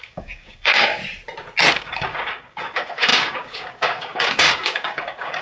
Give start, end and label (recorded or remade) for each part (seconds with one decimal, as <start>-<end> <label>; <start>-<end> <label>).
0.0-1.0 remade; 1.0-1.7 recorded; 1.7-5.4 remade